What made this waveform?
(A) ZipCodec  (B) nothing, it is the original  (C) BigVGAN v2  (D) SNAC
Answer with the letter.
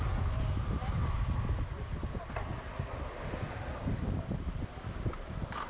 B